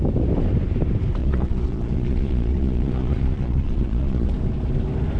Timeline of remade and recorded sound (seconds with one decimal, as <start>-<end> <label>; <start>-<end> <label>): 0.0-1.2 recorded; 1.2-4.3 remade; 4.3-5.2 recorded